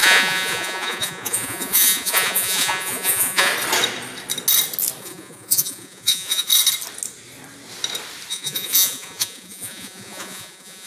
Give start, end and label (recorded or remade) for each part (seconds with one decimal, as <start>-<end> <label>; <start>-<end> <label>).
0.0-3.5 remade; 3.5-5.0 recorded; 5.0-6.5 remade; 6.5-8.3 recorded; 8.3-10.9 remade